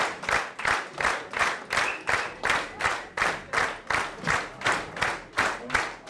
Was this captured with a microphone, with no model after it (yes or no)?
yes